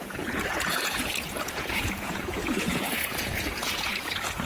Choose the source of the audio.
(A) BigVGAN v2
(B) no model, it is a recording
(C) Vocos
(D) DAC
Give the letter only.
C